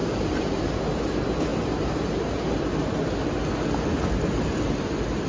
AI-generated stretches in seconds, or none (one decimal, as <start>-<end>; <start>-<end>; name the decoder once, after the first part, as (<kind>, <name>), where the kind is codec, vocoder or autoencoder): 0.0-0.8 (vocoder, BigVGAN v2); 1.5-2.6